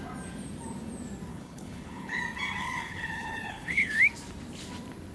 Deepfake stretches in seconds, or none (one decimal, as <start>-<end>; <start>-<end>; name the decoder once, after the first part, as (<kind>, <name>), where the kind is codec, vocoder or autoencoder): 1.3-2.2 (codec, HILCodec); 2.6-4.0